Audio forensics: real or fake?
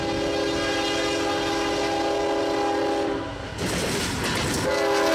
real